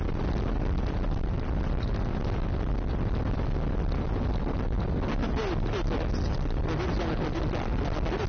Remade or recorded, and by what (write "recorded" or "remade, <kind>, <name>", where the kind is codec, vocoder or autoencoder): recorded